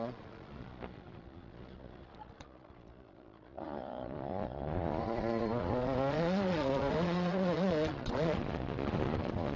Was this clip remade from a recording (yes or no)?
yes